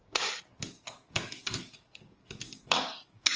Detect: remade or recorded remade